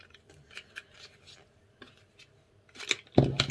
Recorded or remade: recorded